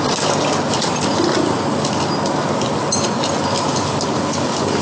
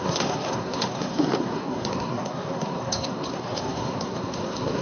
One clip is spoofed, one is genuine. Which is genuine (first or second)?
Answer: first